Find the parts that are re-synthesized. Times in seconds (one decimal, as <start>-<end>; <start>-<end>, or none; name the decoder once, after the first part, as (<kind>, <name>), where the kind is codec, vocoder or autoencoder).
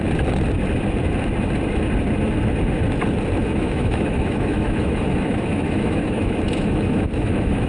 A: 3.4-7.7 (autoencoder, DAC-VAE)